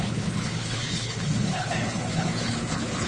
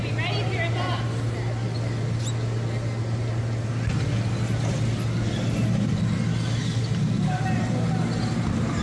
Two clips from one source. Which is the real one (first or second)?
second